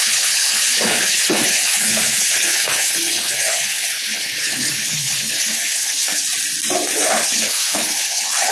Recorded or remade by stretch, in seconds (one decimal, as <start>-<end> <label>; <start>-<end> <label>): 0.0-6.2 remade; 6.2-6.9 recorded; 6.9-8.5 remade